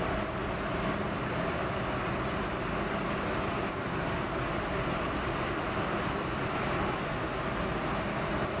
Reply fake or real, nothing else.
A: real